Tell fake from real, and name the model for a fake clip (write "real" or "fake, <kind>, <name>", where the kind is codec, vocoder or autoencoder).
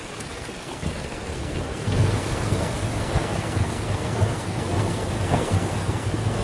fake, codec, SNAC